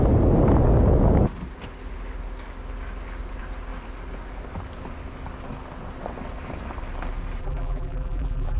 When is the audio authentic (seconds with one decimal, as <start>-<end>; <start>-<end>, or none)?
0.0-7.4